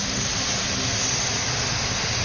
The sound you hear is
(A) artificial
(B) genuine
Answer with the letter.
B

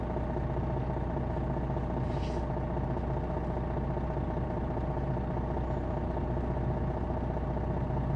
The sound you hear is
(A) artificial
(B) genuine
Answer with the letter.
B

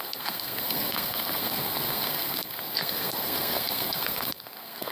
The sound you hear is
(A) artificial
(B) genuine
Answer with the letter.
A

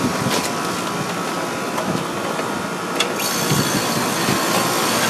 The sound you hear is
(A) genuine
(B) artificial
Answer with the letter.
A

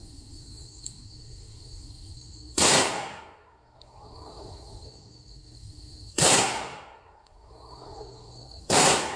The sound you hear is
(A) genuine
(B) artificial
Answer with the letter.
B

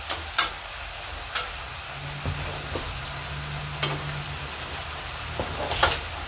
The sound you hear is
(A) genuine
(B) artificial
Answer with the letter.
A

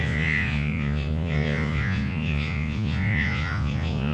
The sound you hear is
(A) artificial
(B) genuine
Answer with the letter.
A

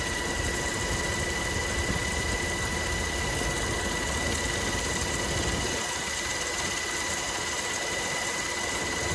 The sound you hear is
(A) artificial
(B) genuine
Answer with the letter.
B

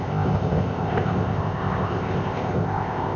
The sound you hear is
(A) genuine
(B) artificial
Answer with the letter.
B